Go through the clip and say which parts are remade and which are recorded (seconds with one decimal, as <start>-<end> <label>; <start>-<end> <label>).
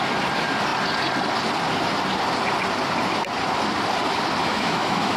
0.0-4.4 recorded; 4.4-5.2 remade